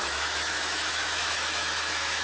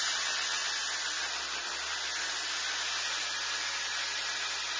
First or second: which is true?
second